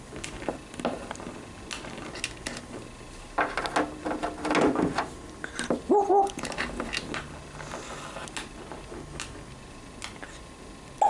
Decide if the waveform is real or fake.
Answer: real